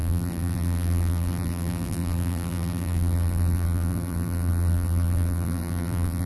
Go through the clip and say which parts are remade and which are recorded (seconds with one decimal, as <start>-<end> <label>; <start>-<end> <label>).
0.0-6.3 remade